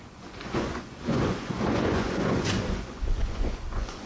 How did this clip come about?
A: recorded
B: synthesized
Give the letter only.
B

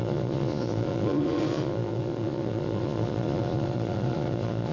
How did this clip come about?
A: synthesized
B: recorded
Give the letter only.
A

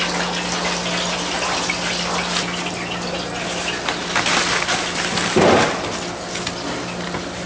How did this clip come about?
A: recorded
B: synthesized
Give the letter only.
A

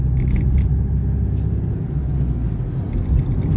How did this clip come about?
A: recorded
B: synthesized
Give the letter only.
A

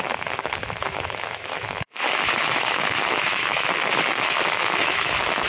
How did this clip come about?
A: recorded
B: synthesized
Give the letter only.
B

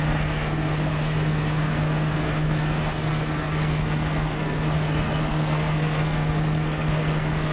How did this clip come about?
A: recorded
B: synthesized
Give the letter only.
B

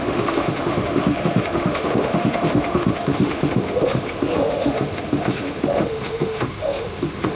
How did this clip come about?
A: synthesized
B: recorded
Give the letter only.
A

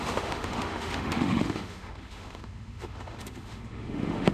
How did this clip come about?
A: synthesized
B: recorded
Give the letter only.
A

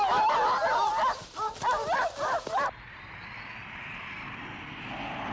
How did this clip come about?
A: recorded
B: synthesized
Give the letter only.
B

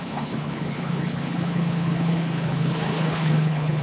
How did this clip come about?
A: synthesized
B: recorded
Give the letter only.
A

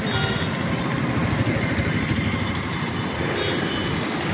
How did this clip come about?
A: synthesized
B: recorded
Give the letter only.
B